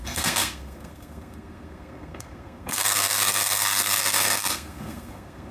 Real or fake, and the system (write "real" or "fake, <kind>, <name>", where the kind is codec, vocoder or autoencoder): fake, codec, SNAC